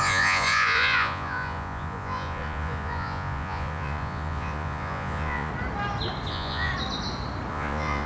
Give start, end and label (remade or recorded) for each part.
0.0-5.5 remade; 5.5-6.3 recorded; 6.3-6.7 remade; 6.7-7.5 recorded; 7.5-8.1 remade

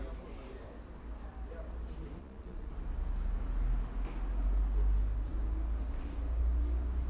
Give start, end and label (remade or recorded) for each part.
0.0-2.2 recorded; 2.2-2.7 remade; 2.7-7.1 recorded

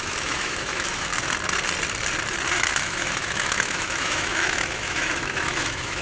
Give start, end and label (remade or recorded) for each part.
0.0-1.1 remade; 1.1-2.8 recorded; 2.8-6.0 remade